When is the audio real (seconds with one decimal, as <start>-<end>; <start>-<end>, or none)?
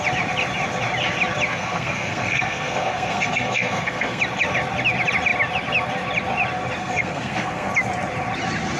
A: 0.0-1.5; 4.2-6.8; 7.7-8.8